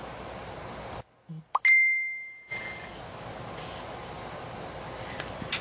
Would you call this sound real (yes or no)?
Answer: yes